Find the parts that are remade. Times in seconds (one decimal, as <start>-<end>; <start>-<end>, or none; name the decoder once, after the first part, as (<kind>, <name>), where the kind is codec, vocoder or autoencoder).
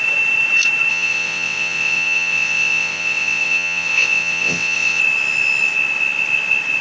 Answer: 0.9-5.0 (vocoder, WaveNeXt)